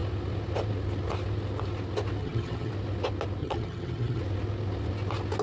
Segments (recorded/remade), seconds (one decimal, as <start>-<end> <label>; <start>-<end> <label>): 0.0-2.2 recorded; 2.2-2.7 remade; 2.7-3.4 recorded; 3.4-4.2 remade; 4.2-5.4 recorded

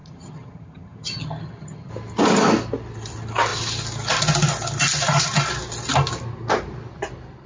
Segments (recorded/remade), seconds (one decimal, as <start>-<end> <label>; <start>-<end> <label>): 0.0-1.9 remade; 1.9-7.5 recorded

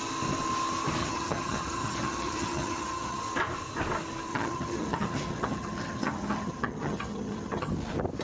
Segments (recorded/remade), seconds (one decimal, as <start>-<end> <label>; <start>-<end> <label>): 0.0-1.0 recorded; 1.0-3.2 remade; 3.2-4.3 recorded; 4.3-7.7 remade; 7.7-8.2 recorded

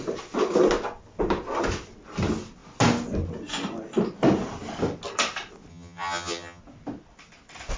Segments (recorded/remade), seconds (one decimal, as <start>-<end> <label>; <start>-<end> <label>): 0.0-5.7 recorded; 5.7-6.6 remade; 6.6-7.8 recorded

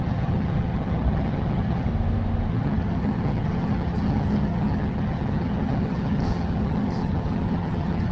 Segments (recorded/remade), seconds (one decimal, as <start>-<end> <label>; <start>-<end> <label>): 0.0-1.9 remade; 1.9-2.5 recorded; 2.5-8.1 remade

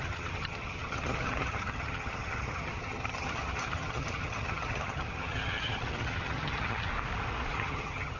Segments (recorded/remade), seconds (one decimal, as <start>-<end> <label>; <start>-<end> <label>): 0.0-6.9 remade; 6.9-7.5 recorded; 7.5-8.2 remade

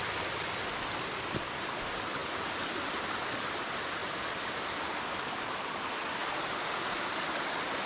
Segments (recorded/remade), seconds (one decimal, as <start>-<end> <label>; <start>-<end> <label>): 0.0-7.9 recorded